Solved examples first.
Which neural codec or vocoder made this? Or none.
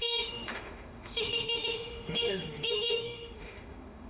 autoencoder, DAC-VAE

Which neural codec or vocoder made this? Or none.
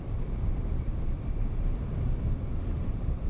none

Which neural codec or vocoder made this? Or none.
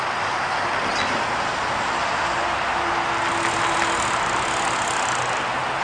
none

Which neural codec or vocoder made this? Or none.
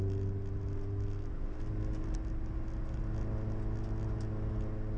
none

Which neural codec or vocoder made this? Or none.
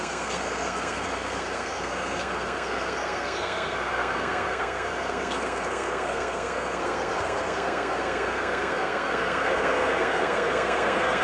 codec, SNAC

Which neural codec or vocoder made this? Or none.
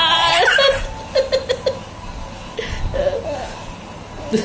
none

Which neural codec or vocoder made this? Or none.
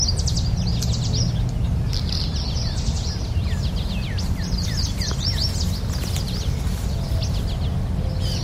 none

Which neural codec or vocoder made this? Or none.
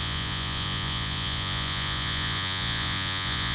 vocoder, Vocos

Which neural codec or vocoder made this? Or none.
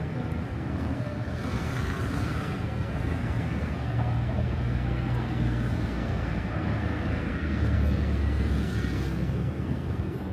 codec, SNAC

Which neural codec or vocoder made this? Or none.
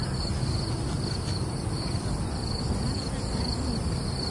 none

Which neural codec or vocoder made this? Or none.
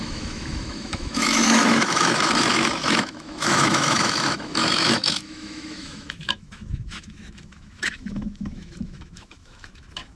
autoencoder, DAC-VAE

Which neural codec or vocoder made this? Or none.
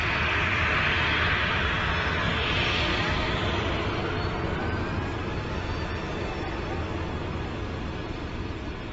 none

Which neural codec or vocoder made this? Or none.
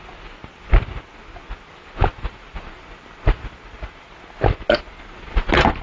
none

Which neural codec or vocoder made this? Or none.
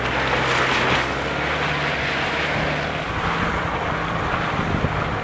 none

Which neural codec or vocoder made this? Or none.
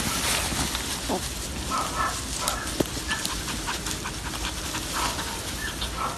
none